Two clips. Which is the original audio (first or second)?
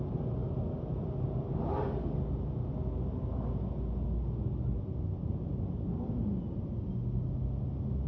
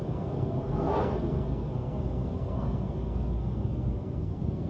first